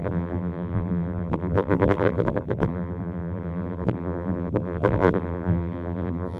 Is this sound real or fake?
fake